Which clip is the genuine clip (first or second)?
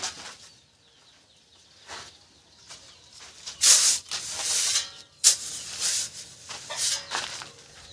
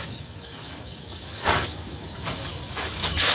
first